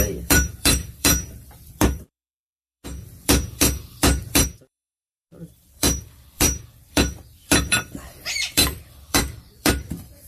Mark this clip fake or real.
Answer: fake